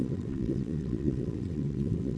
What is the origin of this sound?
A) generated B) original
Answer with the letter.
A